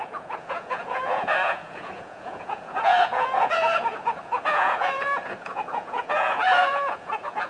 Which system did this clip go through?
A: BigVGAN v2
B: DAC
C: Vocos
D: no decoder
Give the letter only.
C